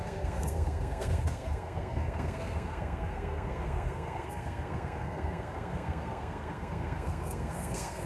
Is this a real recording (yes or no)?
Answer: no